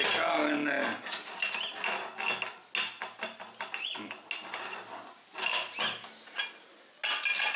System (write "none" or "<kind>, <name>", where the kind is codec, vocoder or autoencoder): none